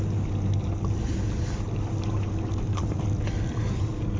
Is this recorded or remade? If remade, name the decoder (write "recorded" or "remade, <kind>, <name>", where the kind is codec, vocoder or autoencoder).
recorded